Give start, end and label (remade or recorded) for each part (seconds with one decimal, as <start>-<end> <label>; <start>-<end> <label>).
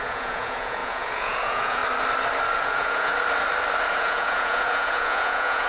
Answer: 0.0-1.8 remade; 1.8-2.6 recorded; 2.6-3.1 remade; 3.1-3.9 recorded; 3.9-5.7 remade